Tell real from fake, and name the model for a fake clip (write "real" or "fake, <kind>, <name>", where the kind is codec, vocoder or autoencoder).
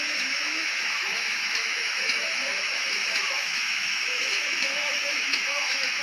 fake, autoencoder, DAC-VAE